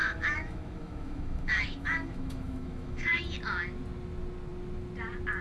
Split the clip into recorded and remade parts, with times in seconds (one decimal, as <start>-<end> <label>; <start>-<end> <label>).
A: 0.0-3.2 remade; 3.2-5.4 recorded